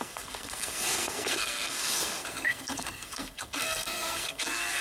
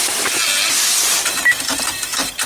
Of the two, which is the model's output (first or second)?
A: first